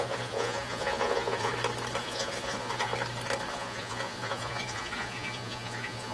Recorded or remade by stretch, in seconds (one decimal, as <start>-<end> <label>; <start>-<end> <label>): 0.0-1.5 remade; 1.5-2.0 recorded; 2.0-2.9 remade; 2.9-3.5 recorded; 3.5-6.1 remade